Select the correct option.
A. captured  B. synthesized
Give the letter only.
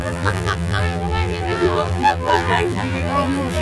B